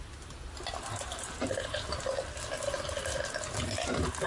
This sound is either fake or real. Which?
real